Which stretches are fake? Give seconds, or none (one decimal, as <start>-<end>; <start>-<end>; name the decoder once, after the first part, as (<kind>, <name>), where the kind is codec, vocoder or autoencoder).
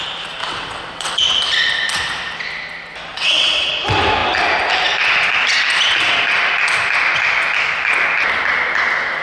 0.4-1.2 (vocoder, WaveNeXt); 3.1-3.7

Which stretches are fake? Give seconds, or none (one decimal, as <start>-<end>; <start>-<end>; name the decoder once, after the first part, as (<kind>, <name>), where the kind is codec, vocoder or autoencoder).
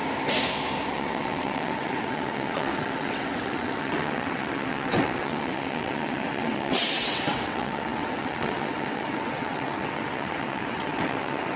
0.9-11.6 (vocoder, WaveNeXt)